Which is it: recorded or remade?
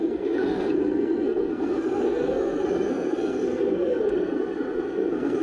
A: remade